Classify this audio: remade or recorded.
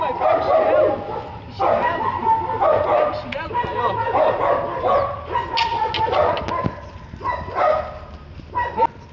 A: recorded